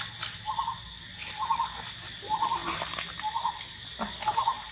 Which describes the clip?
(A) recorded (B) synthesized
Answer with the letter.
A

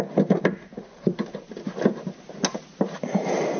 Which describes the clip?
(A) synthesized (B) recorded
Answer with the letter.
B